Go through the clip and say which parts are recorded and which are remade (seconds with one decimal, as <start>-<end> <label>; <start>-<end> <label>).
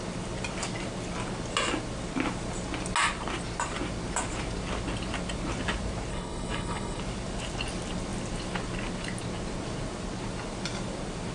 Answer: 0.0-6.1 recorded; 6.1-7.0 remade; 7.0-11.3 recorded